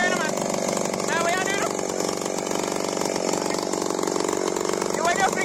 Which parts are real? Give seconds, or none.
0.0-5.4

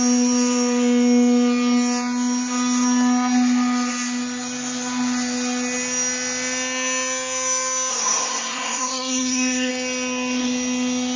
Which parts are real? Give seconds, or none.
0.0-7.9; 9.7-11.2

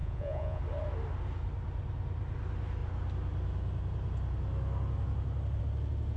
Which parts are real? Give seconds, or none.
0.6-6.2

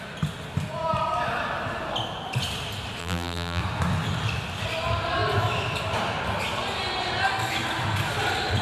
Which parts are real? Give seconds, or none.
0.0-3.0; 3.6-8.6